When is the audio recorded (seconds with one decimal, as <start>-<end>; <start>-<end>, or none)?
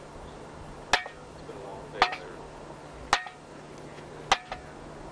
0.0-5.1